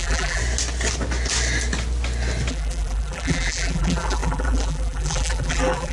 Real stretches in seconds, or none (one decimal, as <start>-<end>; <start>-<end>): 0.4-2.5